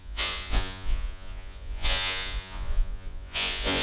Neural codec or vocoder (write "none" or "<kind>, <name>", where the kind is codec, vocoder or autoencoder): vocoder, Vocos